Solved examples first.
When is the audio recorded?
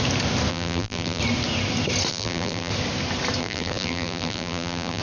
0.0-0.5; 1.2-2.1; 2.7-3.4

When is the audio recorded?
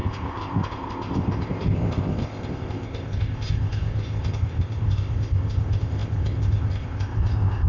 none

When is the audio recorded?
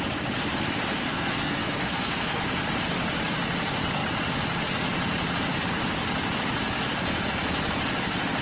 0.0-1.0; 2.4-8.4